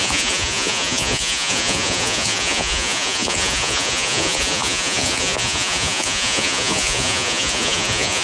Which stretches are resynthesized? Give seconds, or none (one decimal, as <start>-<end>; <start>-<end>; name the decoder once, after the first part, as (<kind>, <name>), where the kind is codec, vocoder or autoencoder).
0.0-8.2 (vocoder, Vocos)